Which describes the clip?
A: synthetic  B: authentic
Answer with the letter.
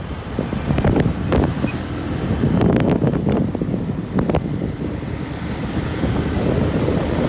B